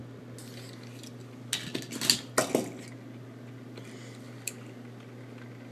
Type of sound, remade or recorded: recorded